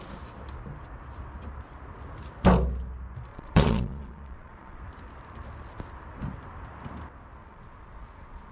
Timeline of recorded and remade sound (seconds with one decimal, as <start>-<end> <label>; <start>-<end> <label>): 0.0-3.3 recorded; 3.3-4.8 remade; 4.8-7.4 recorded; 7.4-8.5 remade